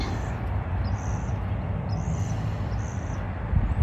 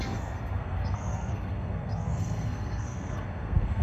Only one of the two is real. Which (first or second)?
first